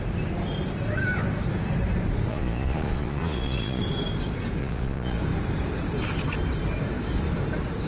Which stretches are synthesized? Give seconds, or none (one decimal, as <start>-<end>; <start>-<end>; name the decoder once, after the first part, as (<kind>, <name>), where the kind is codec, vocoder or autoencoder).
2.3-3.8 (vocoder, Vocos); 4.6-5.2